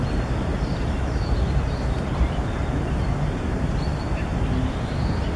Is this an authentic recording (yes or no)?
no